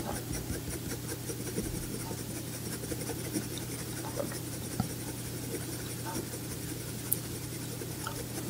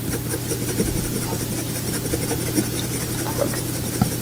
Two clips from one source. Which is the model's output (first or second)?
first